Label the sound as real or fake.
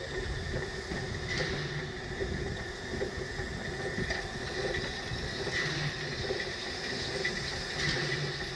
real